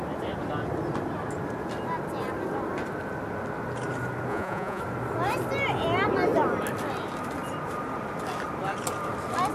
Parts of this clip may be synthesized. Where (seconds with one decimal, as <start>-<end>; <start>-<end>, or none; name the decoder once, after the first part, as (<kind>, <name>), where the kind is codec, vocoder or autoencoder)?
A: 4.3-4.8 (vocoder, Vocos)